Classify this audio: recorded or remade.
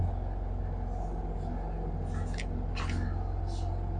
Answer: recorded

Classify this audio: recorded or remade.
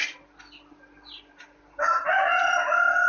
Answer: recorded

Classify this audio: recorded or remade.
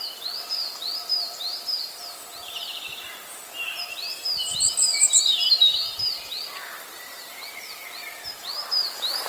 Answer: remade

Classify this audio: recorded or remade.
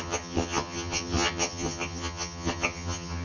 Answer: remade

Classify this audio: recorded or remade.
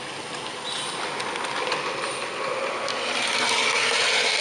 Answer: recorded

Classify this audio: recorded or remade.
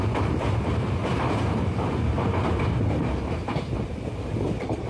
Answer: remade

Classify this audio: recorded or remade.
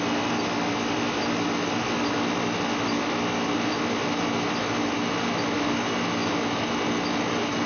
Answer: recorded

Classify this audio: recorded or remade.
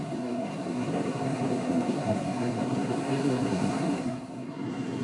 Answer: remade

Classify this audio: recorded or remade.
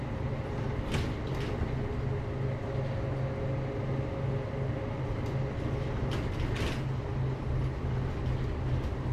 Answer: recorded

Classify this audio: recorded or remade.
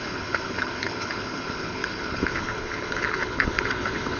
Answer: remade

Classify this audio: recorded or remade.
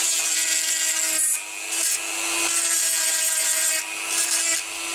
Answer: recorded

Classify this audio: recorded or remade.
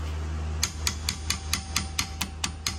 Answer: recorded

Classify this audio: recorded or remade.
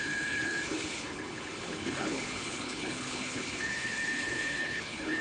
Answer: remade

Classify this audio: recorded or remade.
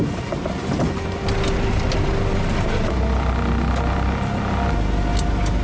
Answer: recorded